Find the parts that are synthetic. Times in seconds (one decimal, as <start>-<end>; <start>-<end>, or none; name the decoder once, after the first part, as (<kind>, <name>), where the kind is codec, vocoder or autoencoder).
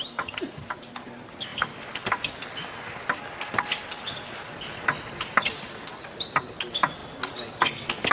none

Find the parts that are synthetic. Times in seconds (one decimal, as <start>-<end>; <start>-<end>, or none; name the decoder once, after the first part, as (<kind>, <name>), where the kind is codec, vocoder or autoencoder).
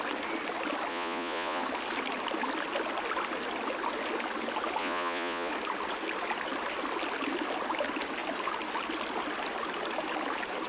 0.9-1.6 (vocoder, Vocos); 4.8-5.5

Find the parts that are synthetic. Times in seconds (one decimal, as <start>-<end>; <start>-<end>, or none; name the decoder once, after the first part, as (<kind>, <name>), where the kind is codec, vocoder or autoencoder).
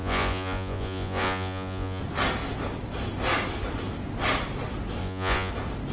0.0-2.0 (vocoder, Vocos); 5.0-5.5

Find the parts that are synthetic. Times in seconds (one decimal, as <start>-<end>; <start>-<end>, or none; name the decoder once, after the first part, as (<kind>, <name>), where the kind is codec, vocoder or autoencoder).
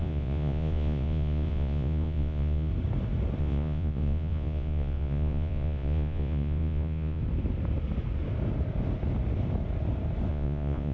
0.0-2.7 (vocoder, Vocos); 3.4-7.2; 10.3-10.9